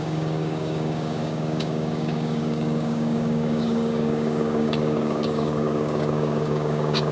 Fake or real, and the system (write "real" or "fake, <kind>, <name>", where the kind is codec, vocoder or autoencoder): fake, codec, DAC